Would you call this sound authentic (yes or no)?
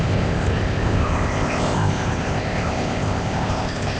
no